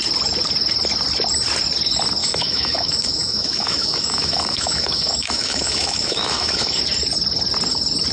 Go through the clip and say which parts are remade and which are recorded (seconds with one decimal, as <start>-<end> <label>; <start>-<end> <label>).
0.0-2.2 recorded; 2.2-6.8 remade; 6.8-8.1 recorded